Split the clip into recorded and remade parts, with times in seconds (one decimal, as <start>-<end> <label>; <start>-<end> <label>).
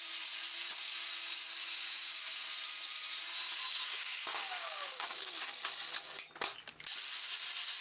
0.0-1.5 recorded; 1.5-2.5 remade; 2.5-3.8 recorded; 3.8-5.3 remade; 5.3-7.8 recorded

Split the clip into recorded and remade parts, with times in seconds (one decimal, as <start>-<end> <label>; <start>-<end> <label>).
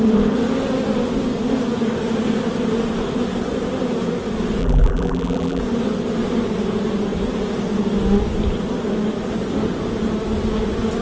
0.0-4.6 recorded; 4.6-5.6 remade; 5.6-11.0 recorded